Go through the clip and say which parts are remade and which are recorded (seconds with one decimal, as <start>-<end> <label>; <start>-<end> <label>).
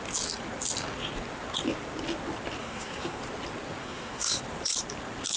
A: 0.0-2.6 recorded; 2.6-3.2 remade; 3.2-3.8 recorded; 3.8-4.4 remade; 4.4-5.4 recorded